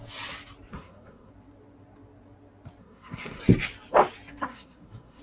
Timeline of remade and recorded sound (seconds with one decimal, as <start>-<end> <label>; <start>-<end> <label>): 0.0-0.7 recorded; 0.7-1.3 remade; 1.3-2.8 recorded; 2.8-3.4 remade; 3.4-4.4 recorded; 4.4-5.2 remade